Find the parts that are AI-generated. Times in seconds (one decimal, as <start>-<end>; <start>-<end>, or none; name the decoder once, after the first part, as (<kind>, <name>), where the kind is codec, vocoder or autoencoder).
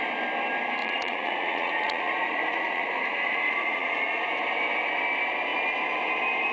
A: 0.8-4.2 (vocoder, Vocos)